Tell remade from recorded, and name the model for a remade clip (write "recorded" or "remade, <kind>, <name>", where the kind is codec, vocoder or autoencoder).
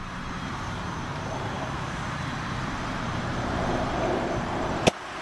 remade, vocoder, BigVGAN v2